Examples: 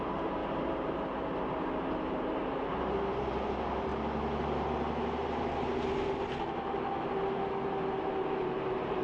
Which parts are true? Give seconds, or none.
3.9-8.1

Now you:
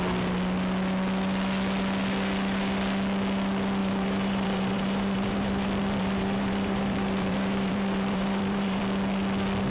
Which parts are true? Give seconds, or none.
0.0-3.8; 8.8-9.7

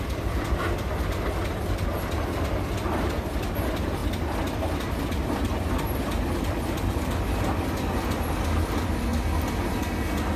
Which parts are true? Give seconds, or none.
4.0-4.9; 9.1-10.4

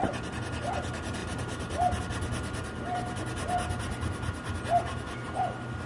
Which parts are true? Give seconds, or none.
0.0-1.2; 2.0-5.9

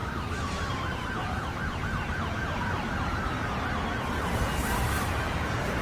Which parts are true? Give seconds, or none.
3.5-5.8